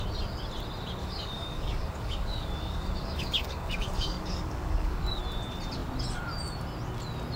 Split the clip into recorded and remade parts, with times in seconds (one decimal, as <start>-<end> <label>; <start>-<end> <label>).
0.0-1.0 recorded; 1.0-5.2 remade; 5.2-7.4 recorded